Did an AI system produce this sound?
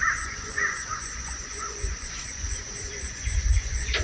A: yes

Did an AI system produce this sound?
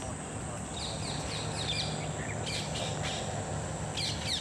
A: no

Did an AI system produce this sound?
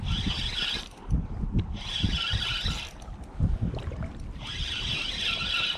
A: no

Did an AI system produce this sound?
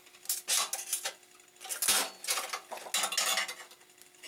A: no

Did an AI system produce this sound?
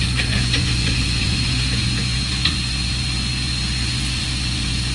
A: yes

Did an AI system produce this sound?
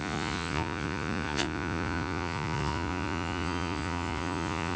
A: yes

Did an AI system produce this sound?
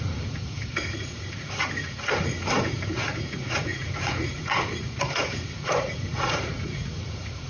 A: yes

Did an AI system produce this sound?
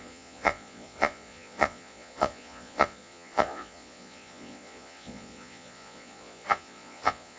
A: yes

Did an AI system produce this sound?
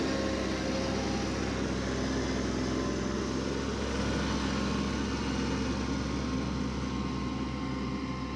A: no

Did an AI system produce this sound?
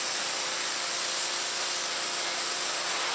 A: no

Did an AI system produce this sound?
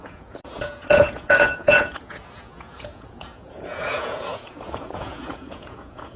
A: yes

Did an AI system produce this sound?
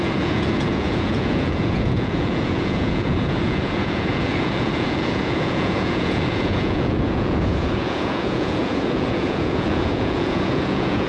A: yes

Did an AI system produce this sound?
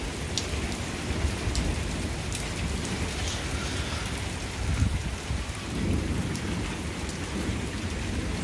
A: no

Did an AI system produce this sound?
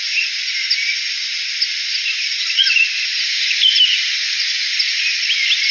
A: no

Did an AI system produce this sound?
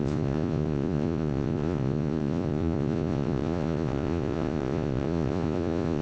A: yes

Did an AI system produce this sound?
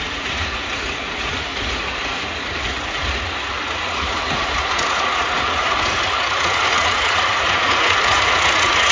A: yes